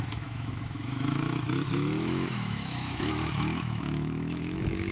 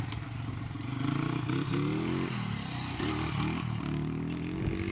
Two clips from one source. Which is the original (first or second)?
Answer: second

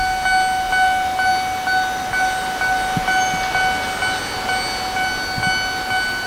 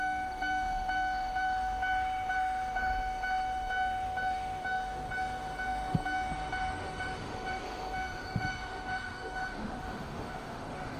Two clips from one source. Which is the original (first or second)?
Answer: first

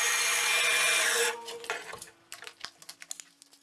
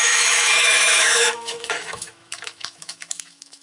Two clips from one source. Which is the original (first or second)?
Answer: first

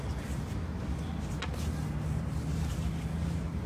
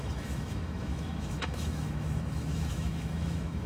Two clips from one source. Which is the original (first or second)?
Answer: first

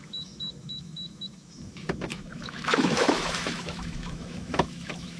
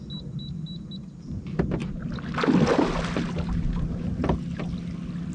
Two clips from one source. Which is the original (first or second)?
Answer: second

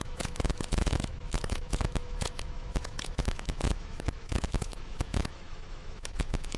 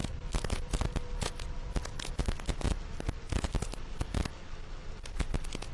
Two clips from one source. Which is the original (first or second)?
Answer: second